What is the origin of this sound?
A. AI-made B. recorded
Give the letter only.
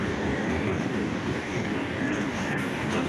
A